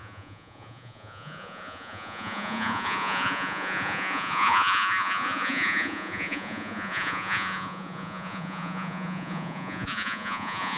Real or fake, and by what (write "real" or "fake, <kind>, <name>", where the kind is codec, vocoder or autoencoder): fake, vocoder, Vocos